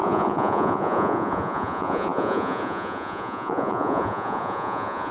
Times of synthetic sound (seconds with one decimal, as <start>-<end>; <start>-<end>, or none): 0.0-5.1